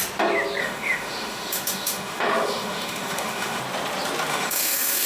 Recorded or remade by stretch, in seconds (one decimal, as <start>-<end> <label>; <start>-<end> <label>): 0.0-0.6 recorded; 0.6-3.6 remade; 3.6-4.3 recorded; 4.3-5.1 remade